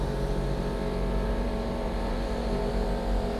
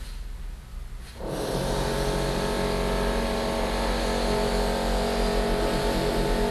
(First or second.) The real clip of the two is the second